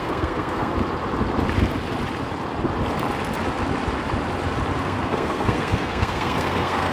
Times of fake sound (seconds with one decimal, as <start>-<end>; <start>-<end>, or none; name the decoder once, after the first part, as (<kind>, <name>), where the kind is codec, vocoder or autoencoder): 0.0-0.7 (codec, SNAC); 4.8-6.9